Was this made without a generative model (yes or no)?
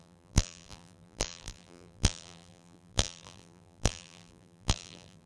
no